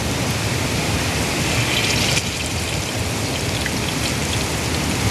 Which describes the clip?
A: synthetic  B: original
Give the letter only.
B